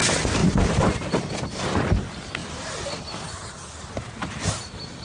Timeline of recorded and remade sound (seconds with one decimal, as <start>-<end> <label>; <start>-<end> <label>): 0.0-0.4 recorded; 0.4-1.3 remade; 1.3-5.0 recorded